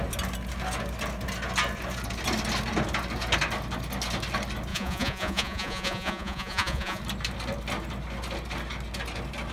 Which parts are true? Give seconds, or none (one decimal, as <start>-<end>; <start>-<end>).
0.0-4.7; 7.0-9.5